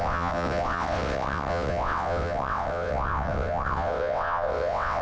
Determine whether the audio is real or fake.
fake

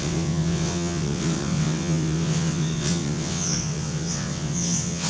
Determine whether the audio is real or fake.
fake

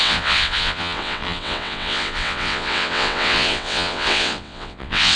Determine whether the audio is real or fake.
fake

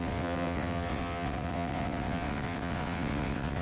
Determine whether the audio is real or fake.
fake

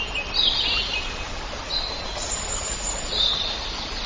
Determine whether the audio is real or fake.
real